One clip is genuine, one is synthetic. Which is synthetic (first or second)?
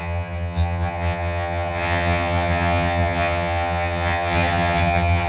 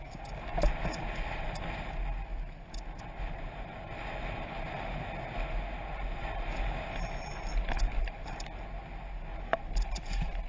first